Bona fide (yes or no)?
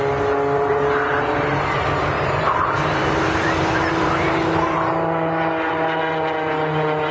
yes